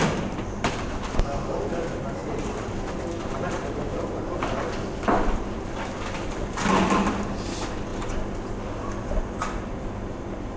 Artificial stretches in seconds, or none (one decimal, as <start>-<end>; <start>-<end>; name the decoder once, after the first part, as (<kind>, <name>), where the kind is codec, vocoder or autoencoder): none